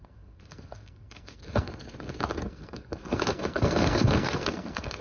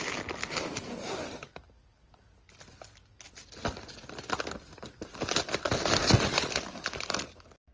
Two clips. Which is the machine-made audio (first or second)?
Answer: first